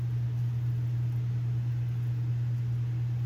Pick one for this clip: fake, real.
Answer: real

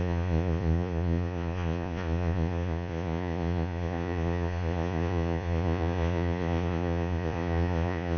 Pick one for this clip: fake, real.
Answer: fake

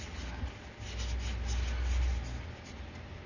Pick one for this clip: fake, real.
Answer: real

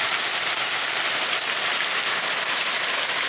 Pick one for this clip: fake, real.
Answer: real